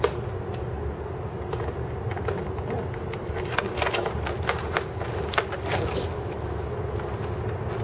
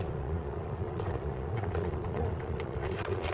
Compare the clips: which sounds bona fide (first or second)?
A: first